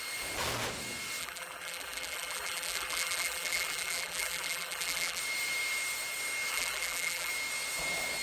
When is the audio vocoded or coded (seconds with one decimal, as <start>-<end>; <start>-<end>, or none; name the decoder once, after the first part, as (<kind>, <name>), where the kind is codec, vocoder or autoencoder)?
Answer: 1.2-5.2 (vocoder, BigVGAN v2); 6.5-7.3